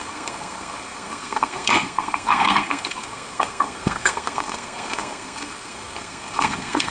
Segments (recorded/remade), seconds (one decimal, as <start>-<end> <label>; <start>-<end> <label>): 0.0-6.9 remade